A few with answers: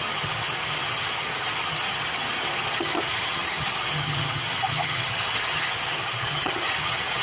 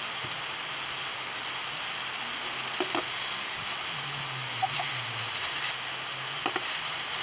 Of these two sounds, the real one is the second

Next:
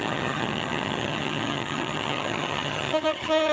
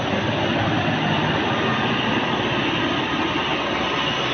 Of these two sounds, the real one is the second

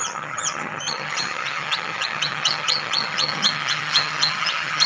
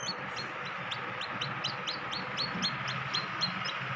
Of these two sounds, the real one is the second